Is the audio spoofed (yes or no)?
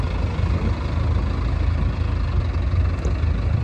no